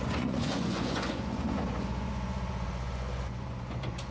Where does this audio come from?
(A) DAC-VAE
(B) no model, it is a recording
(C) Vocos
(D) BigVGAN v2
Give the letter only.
C